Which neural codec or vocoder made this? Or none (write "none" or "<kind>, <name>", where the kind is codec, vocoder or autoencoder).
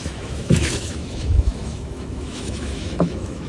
autoencoder, DAC-VAE